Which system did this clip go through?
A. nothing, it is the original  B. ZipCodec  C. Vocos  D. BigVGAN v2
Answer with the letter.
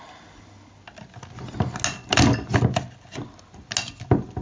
A